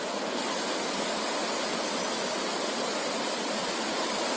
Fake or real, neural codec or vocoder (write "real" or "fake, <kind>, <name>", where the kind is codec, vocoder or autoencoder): real